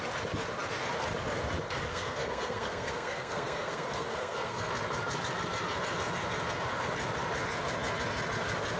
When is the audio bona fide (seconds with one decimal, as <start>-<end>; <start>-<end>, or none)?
0.0-1.9; 4.7-8.8